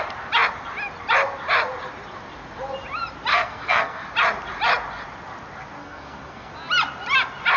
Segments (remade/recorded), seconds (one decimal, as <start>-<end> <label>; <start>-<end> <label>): 0.0-3.3 recorded; 3.3-4.0 remade; 4.0-5.8 recorded; 5.8-6.5 remade; 6.5-7.6 recorded